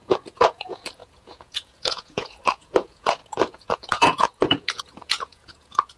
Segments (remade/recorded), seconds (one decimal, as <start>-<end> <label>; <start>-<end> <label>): 0.0-6.0 remade